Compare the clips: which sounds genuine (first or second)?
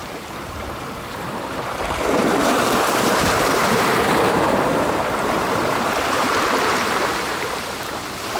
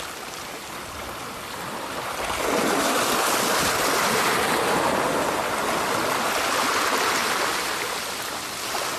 second